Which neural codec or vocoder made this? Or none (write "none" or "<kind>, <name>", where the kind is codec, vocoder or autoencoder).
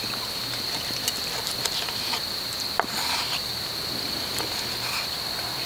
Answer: none